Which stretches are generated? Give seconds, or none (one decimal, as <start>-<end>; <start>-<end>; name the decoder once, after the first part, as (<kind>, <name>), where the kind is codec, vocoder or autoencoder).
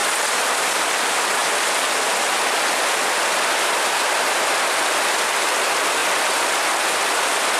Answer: 0.0-0.8 (vocoder, BigVGAN v2)